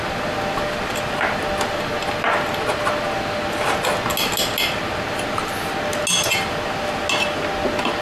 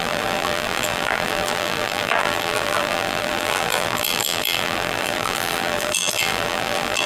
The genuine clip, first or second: first